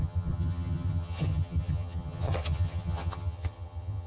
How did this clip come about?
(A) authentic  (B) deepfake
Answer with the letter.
B